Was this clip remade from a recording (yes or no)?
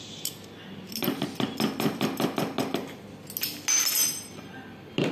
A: no